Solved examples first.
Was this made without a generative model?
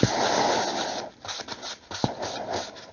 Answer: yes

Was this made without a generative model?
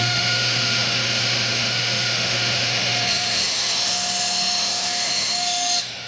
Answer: no